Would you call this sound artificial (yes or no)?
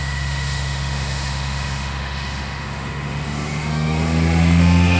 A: yes